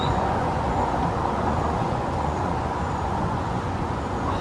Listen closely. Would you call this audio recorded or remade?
remade